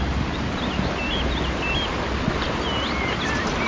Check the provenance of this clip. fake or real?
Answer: real